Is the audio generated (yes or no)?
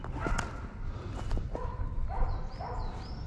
no